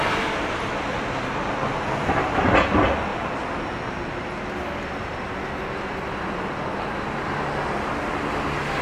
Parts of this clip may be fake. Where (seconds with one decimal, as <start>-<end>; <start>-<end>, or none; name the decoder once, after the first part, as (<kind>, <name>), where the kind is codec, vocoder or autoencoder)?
none